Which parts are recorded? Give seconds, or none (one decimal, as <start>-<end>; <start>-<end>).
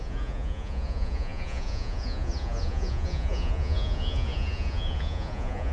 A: none